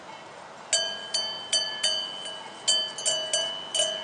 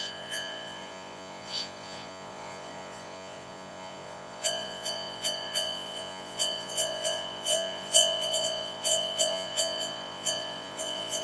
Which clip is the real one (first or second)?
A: first